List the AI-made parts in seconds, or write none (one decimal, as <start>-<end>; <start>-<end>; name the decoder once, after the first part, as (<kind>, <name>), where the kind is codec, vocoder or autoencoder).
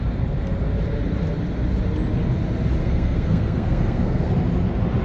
2.8-4.3 (codec, SNAC)